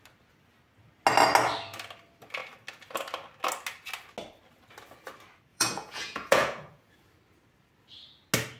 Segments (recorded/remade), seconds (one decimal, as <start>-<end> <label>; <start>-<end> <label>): 0.0-5.5 recorded; 5.5-6.9 remade; 6.9-8.6 recorded